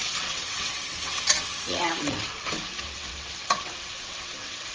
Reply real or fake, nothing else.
fake